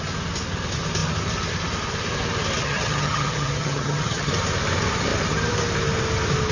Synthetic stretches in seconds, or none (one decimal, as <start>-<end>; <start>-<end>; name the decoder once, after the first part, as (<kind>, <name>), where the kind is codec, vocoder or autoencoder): 2.6-4.3 (vocoder, HiFi-GAN)